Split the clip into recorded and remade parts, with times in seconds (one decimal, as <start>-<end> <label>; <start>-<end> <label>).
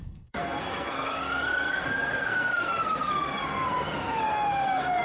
0.0-5.0 remade